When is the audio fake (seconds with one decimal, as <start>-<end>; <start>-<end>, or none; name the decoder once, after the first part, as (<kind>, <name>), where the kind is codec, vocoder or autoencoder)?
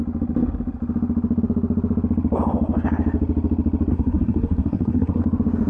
3.9-5.2 (codec, SNAC)